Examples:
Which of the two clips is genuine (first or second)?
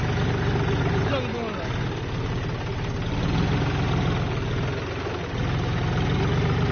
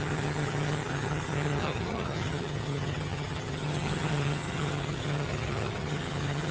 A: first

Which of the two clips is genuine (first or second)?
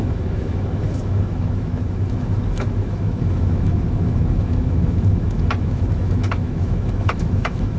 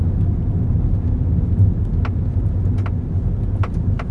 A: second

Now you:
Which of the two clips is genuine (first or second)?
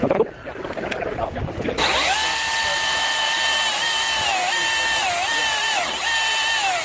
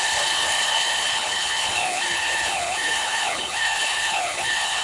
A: first